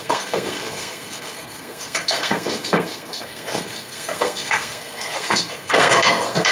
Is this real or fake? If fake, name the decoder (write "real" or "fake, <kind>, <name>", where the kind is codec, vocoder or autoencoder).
fake, codec, SNAC